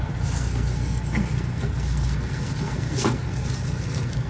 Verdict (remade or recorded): remade